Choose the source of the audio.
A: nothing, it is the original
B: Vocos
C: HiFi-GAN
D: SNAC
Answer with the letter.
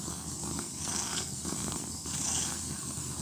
D